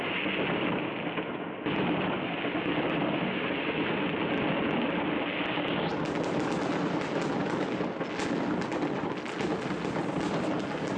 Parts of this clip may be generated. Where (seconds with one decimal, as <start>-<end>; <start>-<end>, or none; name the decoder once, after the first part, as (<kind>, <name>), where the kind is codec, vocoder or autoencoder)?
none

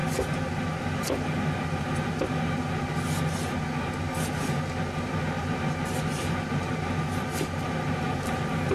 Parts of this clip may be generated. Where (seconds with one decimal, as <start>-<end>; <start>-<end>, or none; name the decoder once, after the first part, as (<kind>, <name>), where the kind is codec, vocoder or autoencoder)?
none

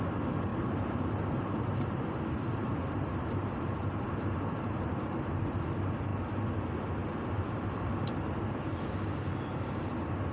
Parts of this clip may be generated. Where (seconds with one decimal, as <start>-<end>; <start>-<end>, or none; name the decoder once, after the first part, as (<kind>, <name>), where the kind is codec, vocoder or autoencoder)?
0.5-5.5 (vocoder, BigVGAN v2); 7.0-7.9

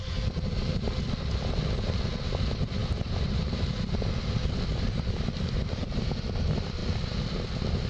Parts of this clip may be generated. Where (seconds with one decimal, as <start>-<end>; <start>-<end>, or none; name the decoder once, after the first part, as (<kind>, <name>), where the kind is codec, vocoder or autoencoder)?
0.0-2.8 (vocoder, BigVGAN v2); 4.7-6.8